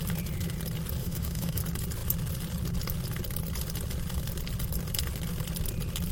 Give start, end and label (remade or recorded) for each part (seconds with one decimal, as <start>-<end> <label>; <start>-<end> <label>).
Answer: 0.0-1.0 recorded; 1.0-1.6 remade; 1.6-6.1 recorded